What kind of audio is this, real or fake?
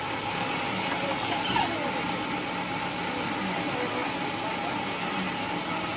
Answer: real